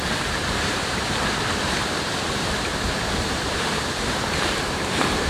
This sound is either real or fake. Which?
fake